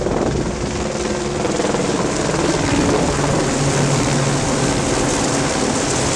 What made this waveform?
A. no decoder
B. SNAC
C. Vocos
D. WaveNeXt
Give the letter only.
A